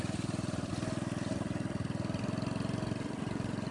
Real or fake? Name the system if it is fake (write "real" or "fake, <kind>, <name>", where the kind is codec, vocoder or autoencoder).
real